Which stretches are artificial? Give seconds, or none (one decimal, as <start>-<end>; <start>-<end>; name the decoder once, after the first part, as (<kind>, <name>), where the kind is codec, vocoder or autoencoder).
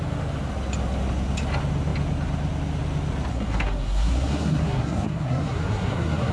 3.3-6.3 (codec, SNAC)